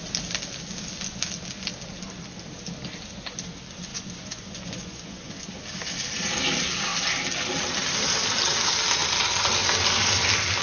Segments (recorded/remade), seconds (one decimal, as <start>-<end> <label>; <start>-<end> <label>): 0.0-3.9 recorded; 3.9-5.5 remade; 5.5-10.6 recorded